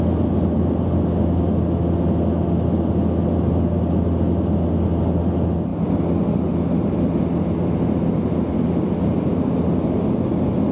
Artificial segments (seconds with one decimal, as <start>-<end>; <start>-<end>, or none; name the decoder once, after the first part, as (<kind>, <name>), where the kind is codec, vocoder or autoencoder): none